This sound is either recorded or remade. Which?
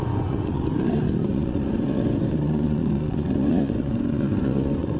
remade